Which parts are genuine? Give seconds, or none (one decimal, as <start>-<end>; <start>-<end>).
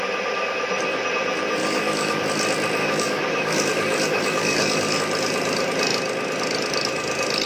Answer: 0.0-1.6; 2.2-2.8; 5.0-7.5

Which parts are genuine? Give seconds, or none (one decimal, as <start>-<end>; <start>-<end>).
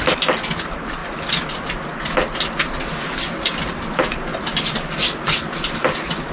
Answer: 0.0-6.3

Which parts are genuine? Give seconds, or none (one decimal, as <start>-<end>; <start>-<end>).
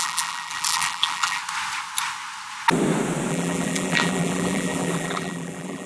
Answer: 1.4-3.3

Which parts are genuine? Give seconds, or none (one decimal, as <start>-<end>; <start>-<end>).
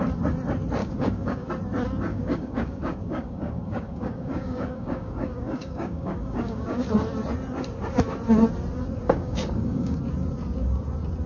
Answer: 0.0-0.8; 1.5-2.1; 6.9-9.0; 10.0-11.3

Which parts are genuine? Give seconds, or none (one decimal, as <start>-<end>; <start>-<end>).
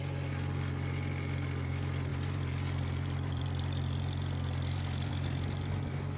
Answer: 0.0-2.1; 5.1-6.2